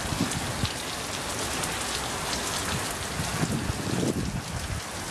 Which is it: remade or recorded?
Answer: recorded